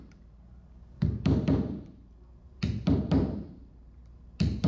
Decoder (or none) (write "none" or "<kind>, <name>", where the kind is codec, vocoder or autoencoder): vocoder, BigVGAN v2